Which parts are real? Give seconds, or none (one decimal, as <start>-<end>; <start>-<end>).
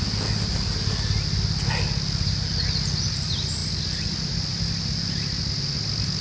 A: 0.0-6.2